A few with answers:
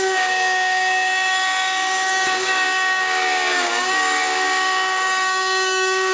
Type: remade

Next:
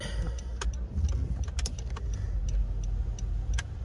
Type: recorded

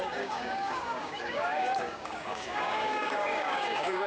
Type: remade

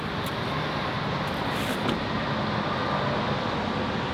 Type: recorded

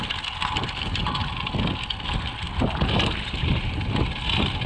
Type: recorded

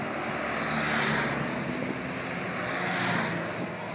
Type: recorded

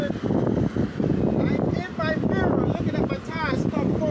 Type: recorded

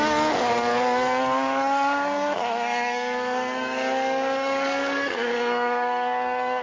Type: remade